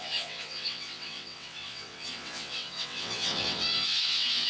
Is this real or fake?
fake